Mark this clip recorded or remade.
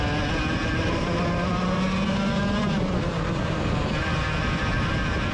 recorded